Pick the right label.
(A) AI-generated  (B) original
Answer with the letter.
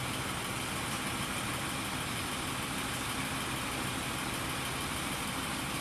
B